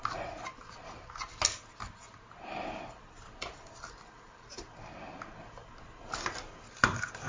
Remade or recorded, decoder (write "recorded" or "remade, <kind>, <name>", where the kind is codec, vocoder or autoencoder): recorded